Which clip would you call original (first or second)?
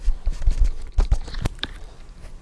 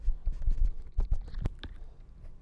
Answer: second